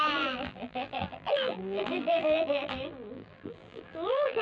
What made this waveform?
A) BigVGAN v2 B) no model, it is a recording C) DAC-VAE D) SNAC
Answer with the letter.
A